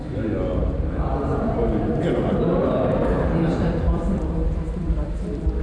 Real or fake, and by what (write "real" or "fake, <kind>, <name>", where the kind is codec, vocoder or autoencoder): fake, vocoder, BigVGAN v2